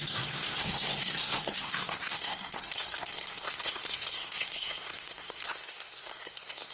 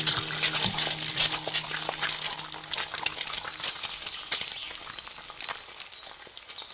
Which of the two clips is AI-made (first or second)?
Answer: first